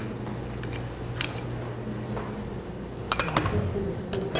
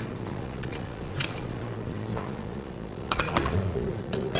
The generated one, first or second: second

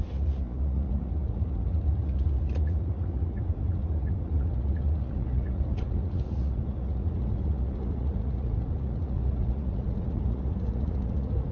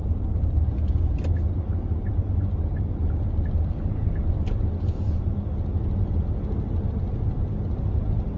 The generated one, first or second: first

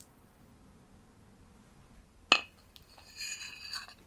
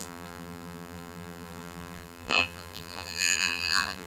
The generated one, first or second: second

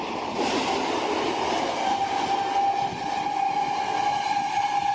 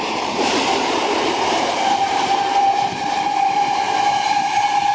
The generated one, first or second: second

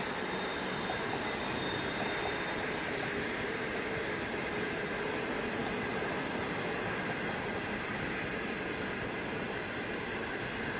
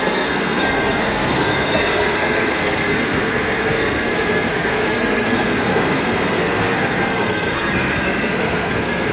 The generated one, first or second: second